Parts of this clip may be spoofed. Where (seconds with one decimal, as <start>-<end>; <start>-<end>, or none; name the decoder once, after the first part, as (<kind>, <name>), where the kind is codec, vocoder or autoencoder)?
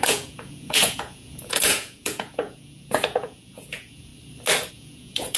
0.0-4.1 (vocoder, Vocos); 4.7-5.4